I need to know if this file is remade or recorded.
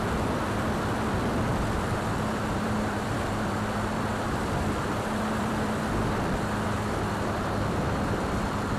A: remade